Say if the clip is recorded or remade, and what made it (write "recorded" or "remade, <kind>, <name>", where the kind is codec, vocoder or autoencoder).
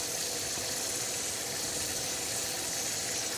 recorded